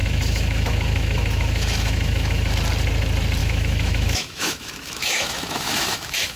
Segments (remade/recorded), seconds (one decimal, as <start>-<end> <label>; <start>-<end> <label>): 0.0-2.5 remade; 2.5-3.4 recorded; 3.4-6.4 remade